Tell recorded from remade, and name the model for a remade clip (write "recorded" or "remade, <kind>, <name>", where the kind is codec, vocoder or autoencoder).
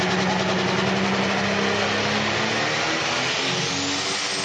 recorded